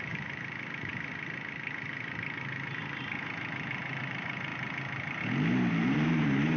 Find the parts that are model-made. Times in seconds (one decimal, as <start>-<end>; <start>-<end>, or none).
0.0-0.9; 4.0-4.5; 5.7-6.6